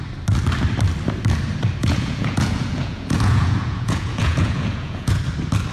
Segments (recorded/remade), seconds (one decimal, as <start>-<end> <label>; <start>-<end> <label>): 0.0-1.8 recorded; 1.8-5.2 remade; 5.2-5.7 recorded